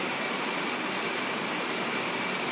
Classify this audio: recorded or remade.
recorded